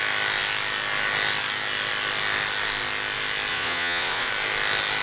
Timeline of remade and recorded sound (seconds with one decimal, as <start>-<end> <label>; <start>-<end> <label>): 0.0-3.5 recorded; 3.5-4.3 remade; 4.3-5.0 recorded